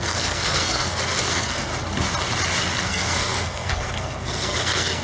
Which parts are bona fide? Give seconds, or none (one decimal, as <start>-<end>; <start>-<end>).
1.7-2.8